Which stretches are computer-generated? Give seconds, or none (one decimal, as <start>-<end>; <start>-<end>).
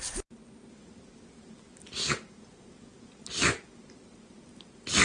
none